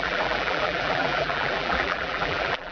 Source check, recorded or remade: remade